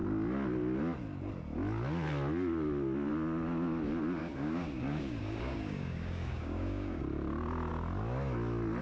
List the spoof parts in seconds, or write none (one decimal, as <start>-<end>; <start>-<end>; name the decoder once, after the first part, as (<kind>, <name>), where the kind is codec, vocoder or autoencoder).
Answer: 4.2-7.0 (codec, DAC)